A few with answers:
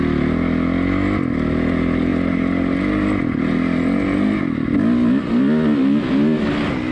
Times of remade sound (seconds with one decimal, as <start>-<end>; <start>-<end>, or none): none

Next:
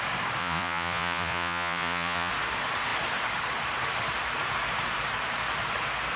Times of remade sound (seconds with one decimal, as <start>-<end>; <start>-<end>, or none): 0.4-2.3

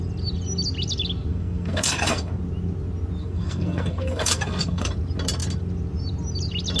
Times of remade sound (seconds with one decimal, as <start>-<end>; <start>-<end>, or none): 1.3-2.4; 3.2-4.9